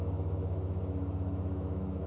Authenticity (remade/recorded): remade